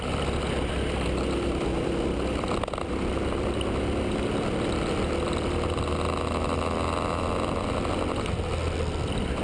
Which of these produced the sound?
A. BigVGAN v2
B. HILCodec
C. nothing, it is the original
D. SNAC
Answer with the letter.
C